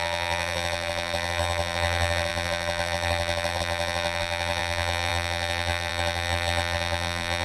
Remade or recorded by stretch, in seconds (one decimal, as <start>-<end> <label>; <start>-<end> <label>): 0.0-7.4 remade